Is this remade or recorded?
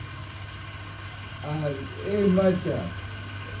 recorded